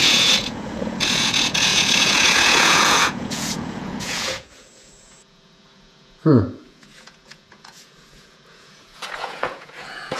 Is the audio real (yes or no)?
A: no